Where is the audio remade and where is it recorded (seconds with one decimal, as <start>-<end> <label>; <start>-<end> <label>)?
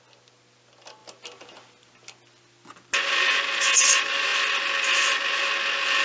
0.0-6.0 recorded